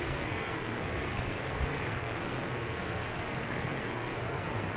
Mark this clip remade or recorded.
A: remade